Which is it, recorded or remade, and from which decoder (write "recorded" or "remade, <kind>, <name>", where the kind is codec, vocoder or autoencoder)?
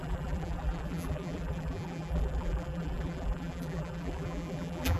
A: remade, vocoder, BigVGAN v2